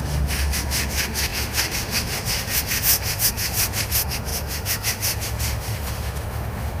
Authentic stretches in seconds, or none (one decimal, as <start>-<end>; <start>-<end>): none